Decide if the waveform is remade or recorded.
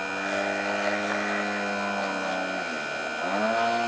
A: recorded